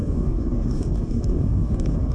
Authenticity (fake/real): fake